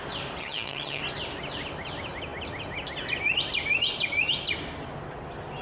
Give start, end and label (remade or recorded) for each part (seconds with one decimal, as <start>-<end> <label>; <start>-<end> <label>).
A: 0.0-0.4 recorded; 0.4-1.0 remade; 1.0-5.6 recorded